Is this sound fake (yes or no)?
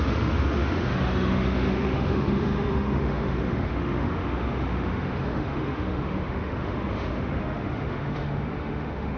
yes